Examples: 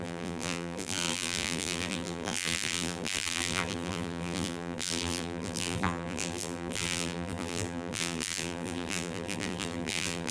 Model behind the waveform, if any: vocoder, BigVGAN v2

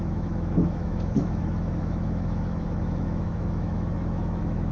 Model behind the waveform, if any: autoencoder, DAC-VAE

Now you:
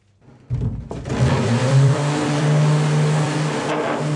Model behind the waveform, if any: vocoder, BigVGAN v2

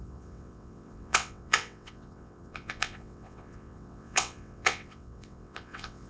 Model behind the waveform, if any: vocoder, WaveNeXt